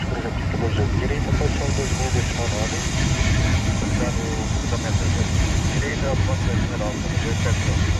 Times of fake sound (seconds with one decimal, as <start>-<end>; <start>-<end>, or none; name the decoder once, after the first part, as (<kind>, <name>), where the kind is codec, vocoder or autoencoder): 3.5-4.1 (vocoder, BigVGAN v2); 4.6-6.3

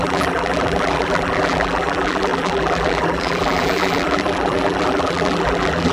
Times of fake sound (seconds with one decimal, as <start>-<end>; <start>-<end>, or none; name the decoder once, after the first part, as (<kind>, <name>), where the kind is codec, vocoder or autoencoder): 0.0-5.9 (vocoder, BigVGAN v2)

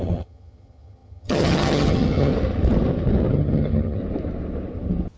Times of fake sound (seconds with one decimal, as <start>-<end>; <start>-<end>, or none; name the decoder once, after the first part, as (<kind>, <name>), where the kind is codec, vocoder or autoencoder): 0.0-2.3 (vocoder, HiFi-GAN); 3.3-4.0

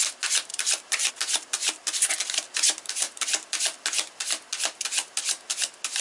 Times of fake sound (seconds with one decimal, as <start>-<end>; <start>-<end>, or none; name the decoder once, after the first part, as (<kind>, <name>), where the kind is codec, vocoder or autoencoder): 0.5-1.1 (vocoder, BigVGAN v2)

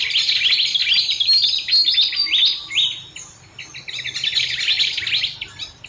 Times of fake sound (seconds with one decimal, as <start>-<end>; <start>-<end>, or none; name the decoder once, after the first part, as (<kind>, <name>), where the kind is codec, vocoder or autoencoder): none

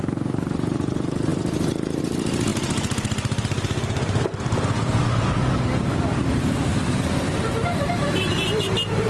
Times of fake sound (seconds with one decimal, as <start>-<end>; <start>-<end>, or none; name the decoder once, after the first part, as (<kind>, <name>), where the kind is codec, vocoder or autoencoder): 0.0-9.1 (vocoder, BigVGAN v2)

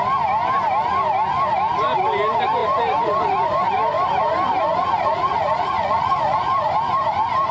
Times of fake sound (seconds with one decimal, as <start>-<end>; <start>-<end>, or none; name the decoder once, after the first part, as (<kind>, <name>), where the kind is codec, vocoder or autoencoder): 4.8-6.5 (vocoder, Vocos)

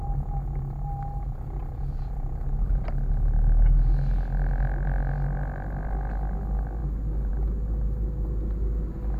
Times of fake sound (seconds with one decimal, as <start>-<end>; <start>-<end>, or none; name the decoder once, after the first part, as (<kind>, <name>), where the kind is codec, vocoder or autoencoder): none